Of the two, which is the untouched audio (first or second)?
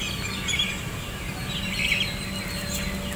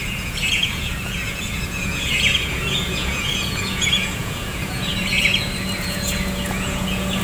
first